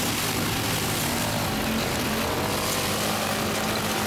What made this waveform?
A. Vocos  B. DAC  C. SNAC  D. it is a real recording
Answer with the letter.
D